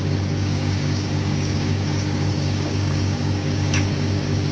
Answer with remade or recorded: remade